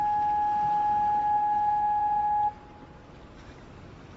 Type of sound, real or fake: real